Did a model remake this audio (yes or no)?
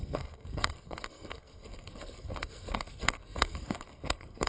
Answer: yes